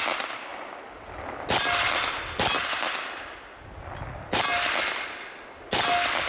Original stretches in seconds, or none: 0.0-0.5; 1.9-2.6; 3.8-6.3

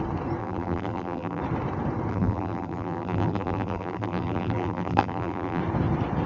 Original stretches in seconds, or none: 0.0-0.4; 1.4-2.1; 5.6-6.3

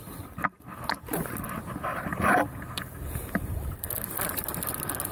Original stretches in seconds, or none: 0.0-1.9; 3.9-5.1

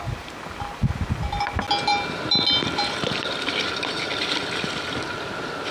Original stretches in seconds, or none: 0.0-5.7